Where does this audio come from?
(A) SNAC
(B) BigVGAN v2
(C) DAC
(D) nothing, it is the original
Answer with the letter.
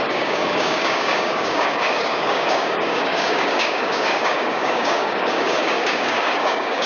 C